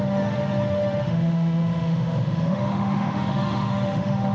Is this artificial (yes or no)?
yes